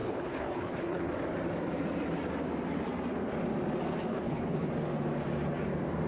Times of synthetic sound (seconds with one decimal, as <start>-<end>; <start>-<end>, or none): 0.0-1.1; 4.1-4.7